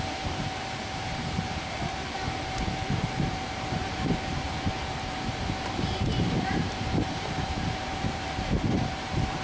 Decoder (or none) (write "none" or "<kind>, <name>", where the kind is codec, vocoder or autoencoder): vocoder, BigVGAN v2